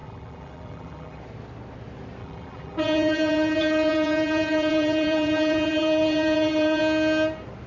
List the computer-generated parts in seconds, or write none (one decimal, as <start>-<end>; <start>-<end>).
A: 0.0-1.2; 2.2-6.8